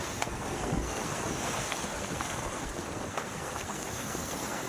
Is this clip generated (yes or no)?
yes